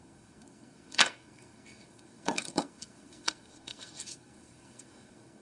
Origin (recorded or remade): remade